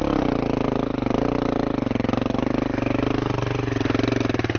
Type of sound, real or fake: real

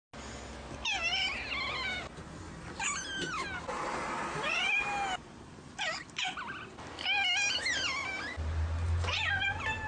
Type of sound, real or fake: real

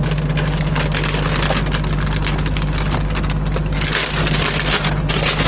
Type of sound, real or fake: real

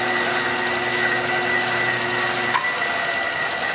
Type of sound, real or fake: real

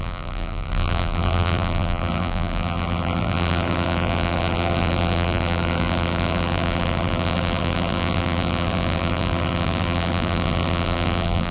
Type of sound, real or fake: fake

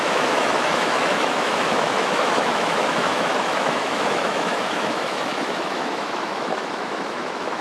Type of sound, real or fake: fake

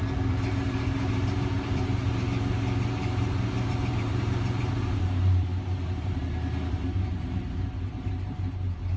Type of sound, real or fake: fake